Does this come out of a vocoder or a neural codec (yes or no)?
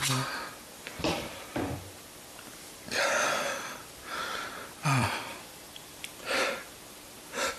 yes